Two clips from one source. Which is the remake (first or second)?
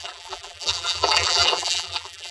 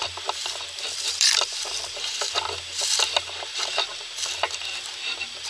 first